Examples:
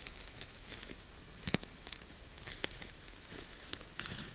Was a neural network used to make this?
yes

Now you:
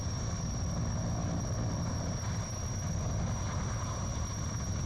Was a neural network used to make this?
no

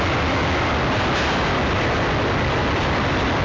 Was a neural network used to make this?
no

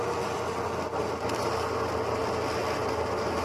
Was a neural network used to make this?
no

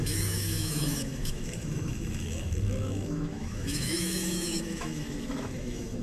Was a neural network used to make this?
yes